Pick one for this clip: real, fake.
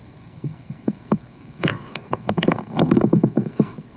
fake